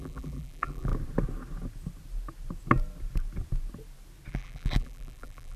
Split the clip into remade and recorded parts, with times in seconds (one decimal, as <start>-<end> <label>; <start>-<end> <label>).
0.0-0.9 remade; 0.9-4.3 recorded; 4.3-5.6 remade